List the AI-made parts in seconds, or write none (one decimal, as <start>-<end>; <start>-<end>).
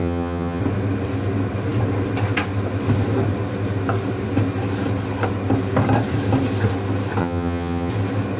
0.0-0.6; 7.2-7.9